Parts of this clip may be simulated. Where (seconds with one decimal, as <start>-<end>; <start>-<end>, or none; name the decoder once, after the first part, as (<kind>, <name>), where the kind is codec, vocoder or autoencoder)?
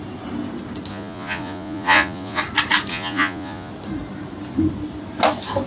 0.9-2.4 (vocoder, Vocos); 2.9-3.7